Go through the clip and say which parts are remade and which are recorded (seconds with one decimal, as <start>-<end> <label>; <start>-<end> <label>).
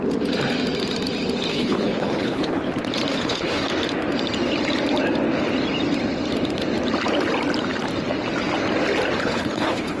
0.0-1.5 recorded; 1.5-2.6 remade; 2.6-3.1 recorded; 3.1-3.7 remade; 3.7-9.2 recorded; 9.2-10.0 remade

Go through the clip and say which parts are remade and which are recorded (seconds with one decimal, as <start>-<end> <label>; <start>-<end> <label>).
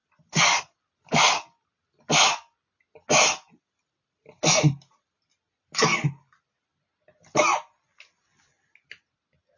0.0-9.6 recorded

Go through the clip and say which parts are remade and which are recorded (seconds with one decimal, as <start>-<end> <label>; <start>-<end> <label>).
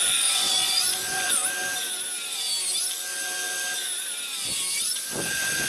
0.0-1.4 remade; 1.4-4.8 recorded; 4.8-5.7 remade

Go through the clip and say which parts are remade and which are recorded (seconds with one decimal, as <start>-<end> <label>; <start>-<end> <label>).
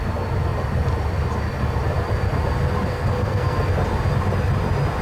0.0-2.9 recorded; 2.9-3.7 remade; 3.7-5.0 recorded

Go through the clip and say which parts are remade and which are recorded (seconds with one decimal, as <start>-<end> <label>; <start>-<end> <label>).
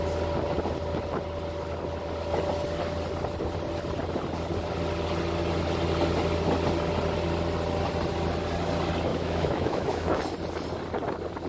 0.0-9.1 recorded; 9.1-10.2 remade; 10.2-11.5 recorded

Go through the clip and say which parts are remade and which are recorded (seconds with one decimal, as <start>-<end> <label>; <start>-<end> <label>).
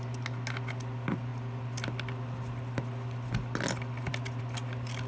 0.0-5.1 recorded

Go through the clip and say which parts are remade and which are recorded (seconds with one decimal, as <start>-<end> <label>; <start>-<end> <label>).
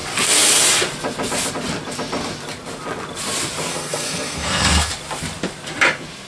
0.0-3.7 recorded; 3.7-4.9 remade; 4.9-6.3 recorded